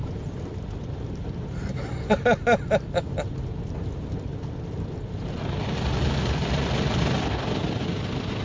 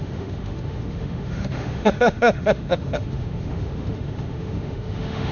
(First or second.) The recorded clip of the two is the first